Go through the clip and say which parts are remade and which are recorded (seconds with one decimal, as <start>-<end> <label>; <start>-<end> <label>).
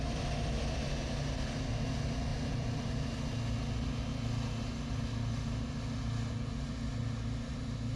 0.0-2.3 recorded; 2.3-2.9 remade; 2.9-8.0 recorded